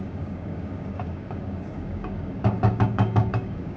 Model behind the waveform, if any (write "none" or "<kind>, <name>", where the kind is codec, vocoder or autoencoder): codec, DAC